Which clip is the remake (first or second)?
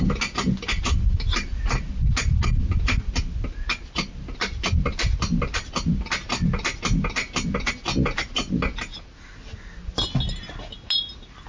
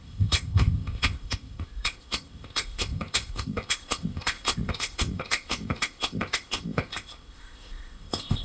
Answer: second